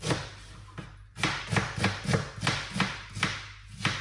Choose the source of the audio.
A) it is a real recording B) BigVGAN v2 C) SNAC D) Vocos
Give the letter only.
A